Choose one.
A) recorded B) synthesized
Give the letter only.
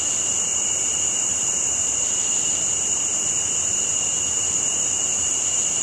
B